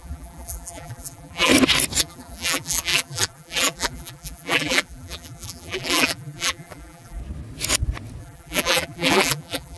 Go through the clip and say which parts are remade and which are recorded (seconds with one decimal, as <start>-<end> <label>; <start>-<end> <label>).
0.0-1.5 remade; 1.5-2.0 recorded; 2.0-7.2 remade; 7.2-8.2 recorded; 8.2-9.8 remade